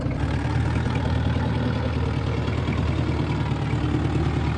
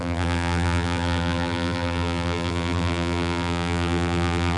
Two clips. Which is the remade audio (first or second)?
second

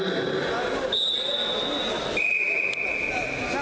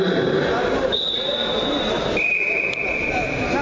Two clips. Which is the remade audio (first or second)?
second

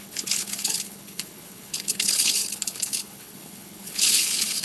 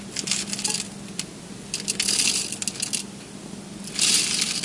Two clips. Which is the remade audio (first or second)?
first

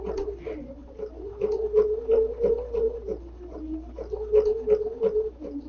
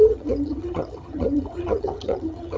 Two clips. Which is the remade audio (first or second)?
second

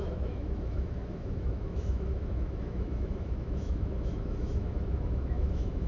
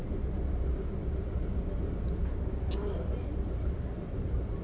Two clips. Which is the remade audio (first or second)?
first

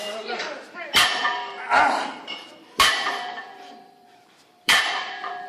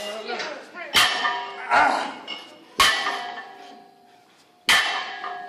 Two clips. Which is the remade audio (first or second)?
first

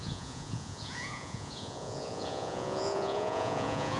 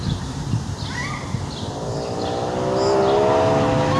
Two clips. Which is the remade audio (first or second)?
first